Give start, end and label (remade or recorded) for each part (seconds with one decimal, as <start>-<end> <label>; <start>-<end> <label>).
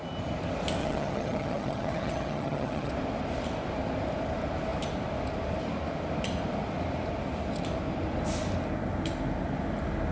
0.0-0.8 recorded; 0.8-2.9 remade; 2.9-10.1 recorded